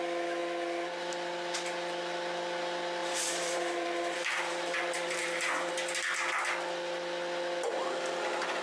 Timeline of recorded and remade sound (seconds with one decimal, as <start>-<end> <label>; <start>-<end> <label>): 0.0-3.0 recorded; 3.0-5.7 remade; 5.7-8.6 recorded